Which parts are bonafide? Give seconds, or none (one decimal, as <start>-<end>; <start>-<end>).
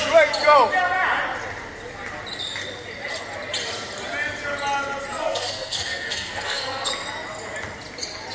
0.0-5.1; 6.9-8.3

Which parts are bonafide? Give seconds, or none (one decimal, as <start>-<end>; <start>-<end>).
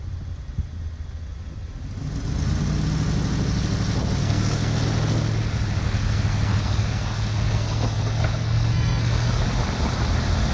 0.0-4.2; 4.8-5.8; 9.4-10.5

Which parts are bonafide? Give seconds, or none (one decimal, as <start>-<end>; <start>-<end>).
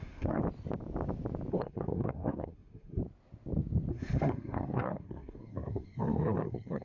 0.4-1.5; 3.0-3.9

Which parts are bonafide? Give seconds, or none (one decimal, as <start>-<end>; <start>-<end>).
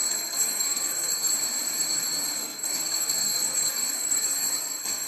1.3-2.4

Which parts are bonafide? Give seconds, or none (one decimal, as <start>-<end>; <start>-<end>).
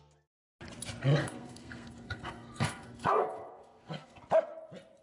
0.0-1.2; 4.2-5.0